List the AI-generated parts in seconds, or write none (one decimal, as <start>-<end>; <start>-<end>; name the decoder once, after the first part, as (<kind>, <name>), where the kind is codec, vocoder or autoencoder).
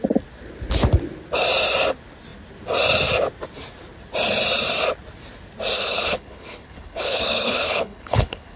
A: 5.8-8.6 (codec, HILCodec)